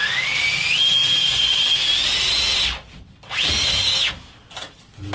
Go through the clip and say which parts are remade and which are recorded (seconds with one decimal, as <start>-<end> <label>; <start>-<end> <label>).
0.0-5.1 recorded